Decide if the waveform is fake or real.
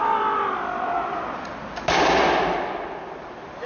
real